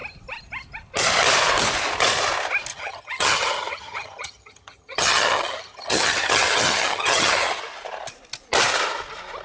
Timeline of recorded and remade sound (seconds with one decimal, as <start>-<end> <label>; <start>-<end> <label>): 0.0-2.7 recorded; 2.7-7.6 remade; 7.6-9.4 recorded